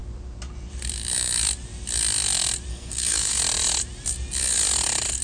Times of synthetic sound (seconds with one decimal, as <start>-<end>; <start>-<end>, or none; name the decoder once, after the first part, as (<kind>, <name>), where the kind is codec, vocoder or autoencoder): 2.7-3.4 (codec, SNAC)